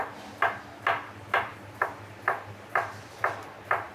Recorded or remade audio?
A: recorded